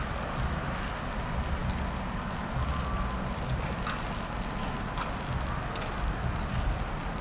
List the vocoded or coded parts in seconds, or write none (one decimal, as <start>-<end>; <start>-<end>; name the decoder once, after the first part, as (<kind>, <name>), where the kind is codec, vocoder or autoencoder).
none